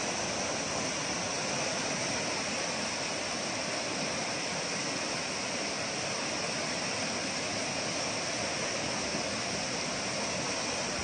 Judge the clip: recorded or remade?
recorded